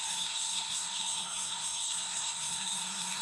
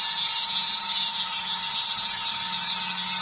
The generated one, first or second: first